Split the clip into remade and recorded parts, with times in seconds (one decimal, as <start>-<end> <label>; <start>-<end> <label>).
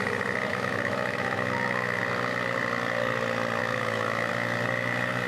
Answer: 0.0-0.5 recorded; 0.5-2.0 remade; 2.0-3.6 recorded; 3.6-4.3 remade; 4.3-5.3 recorded